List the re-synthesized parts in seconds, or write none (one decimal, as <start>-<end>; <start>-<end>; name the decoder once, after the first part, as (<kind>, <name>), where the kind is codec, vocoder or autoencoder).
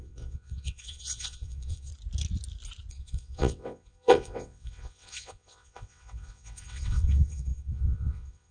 0.0-1.9 (vocoder, WaveNeXt); 2.9-8.5